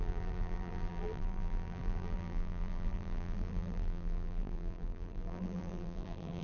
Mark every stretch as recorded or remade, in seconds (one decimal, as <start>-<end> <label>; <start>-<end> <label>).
0.0-6.4 remade